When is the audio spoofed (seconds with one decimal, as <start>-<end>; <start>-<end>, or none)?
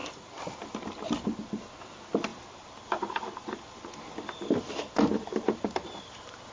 0.0-0.6; 2.3-6.5